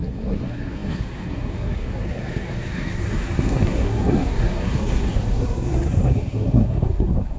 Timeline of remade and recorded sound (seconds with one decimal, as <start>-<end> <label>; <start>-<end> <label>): 0.0-7.4 remade